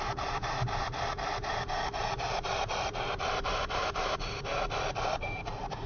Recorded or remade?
remade